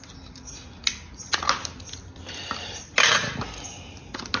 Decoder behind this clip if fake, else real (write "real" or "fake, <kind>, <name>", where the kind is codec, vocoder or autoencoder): real